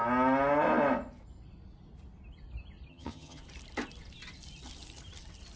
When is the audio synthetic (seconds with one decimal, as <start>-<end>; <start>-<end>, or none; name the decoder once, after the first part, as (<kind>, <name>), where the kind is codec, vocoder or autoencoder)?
2.9-3.4 (vocoder, HiFi-GAN)